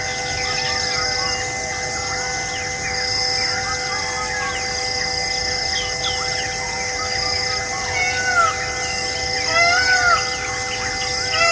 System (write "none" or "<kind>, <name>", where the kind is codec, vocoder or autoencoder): none